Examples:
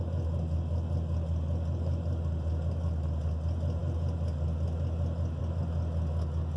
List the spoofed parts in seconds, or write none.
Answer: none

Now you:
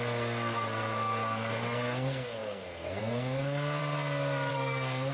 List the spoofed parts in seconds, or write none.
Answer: 0.0-3.8 (codec, SNAC); 4.5-5.1

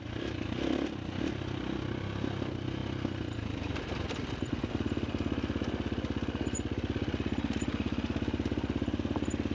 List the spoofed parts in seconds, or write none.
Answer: none